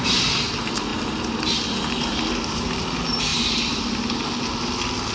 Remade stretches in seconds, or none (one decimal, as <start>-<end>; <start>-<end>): none